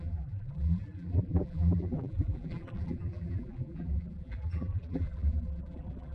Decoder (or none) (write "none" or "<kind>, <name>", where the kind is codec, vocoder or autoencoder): vocoder, BigVGAN v2